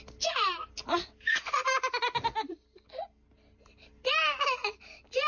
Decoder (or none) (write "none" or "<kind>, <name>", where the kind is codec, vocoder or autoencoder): none